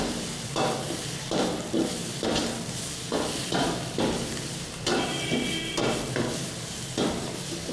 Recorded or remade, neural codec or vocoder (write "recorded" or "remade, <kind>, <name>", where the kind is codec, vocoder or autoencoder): remade, vocoder, BigVGAN v2